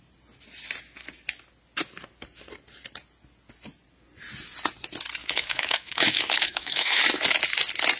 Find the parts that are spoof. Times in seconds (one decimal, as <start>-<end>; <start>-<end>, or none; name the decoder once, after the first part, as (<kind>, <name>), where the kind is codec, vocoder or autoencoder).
5.2-7.0 (autoencoder, DAC-VAE)